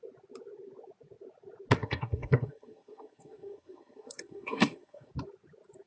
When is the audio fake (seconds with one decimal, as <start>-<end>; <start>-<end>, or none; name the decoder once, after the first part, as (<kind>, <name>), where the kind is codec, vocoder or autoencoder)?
1.8-5.1 (codec, SNAC)